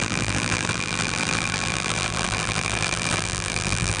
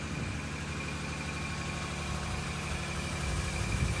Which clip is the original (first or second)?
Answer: second